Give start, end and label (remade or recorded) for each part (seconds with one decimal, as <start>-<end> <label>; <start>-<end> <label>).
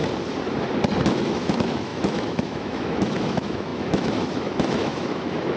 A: 0.0-1.2 recorded; 1.2-5.6 remade